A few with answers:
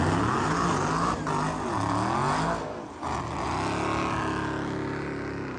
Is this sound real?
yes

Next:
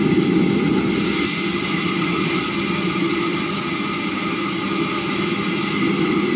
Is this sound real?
yes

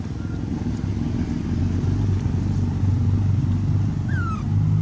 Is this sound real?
yes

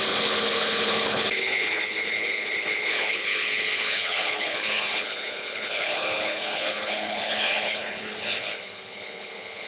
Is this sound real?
no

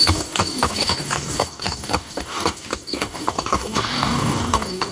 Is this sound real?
no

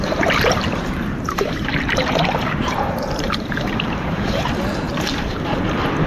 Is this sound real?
no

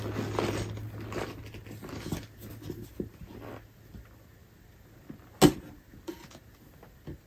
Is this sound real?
yes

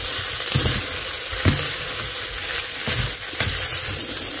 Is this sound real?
yes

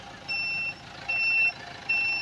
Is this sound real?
yes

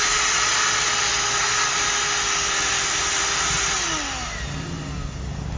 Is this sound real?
yes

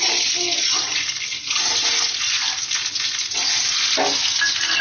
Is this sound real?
yes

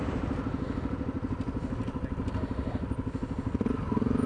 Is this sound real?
yes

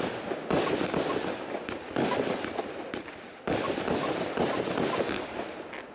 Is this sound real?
yes